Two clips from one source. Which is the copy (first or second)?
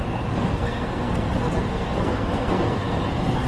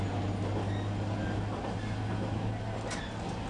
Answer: first